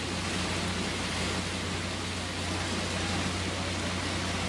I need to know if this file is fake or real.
real